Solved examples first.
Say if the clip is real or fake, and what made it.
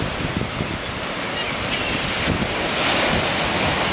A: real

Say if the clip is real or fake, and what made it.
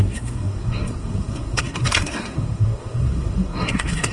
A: fake, codec, SNAC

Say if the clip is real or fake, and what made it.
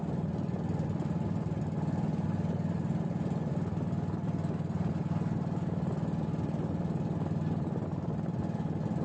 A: real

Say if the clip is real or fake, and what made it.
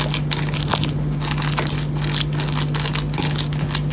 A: real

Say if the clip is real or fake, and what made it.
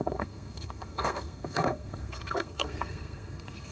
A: fake, codec, SNAC